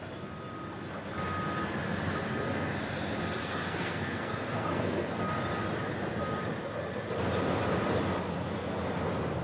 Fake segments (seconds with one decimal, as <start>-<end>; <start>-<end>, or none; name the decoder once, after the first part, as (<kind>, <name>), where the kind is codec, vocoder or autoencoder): 3.4-5.2 (codec, SNAC)